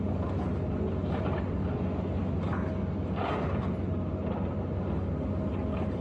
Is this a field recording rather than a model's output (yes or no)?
yes